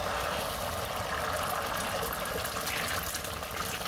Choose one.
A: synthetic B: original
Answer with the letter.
B